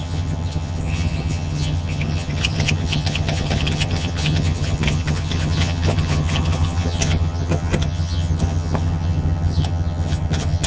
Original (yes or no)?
no